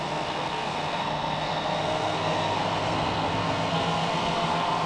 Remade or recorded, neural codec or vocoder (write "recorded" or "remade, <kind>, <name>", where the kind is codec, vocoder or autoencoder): remade, codec, SNAC